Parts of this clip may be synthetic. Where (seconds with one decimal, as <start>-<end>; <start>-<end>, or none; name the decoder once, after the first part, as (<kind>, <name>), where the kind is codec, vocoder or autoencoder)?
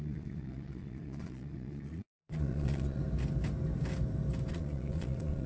0.0-3.0 (vocoder, Vocos); 4.5-5.5